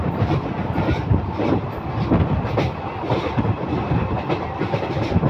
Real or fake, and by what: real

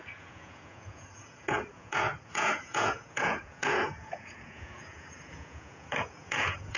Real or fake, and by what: fake, vocoder, Vocos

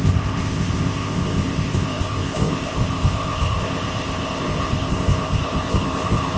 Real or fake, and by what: fake, codec, ZipCodec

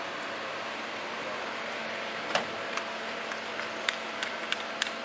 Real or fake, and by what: real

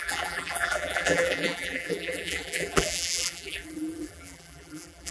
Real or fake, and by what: fake, vocoder, BigVGAN v2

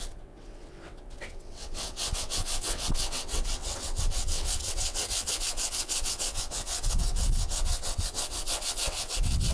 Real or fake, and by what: fake, vocoder, WaveNeXt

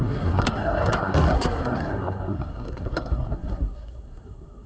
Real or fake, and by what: fake, codec, SNAC